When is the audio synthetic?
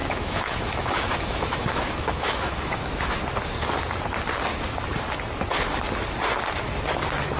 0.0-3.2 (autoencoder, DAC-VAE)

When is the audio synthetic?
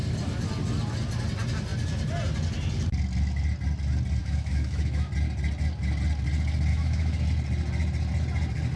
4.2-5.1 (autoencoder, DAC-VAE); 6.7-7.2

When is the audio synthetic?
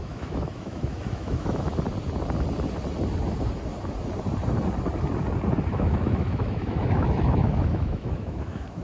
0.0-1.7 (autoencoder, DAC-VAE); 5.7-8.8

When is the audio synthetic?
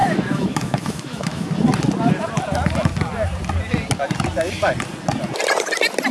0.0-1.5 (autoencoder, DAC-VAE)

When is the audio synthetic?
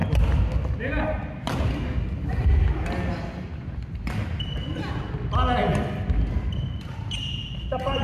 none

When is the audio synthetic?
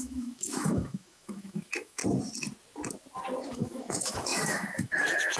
0.0-2.0 (autoencoder, DAC-VAE); 3.5-5.4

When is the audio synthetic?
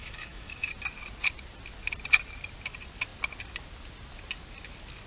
0.0-0.7 (autoencoder, DAC-VAE)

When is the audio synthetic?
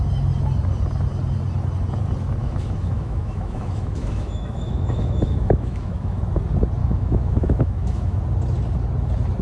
2.4-6.2 (autoencoder, DAC-VAE); 6.8-8.2